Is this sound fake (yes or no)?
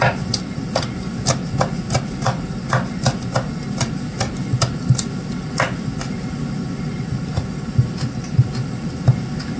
no